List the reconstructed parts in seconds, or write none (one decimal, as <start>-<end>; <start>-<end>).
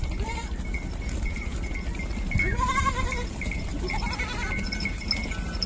none